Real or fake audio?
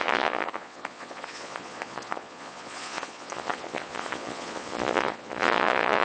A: fake